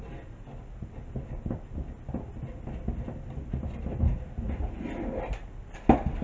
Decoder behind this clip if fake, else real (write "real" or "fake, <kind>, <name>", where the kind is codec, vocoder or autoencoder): real